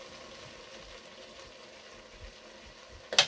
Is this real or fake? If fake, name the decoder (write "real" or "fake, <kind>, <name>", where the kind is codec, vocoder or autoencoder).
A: real